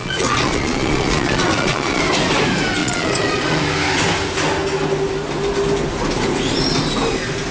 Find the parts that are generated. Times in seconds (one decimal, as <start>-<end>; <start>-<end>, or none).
0.0-2.0; 2.8-3.6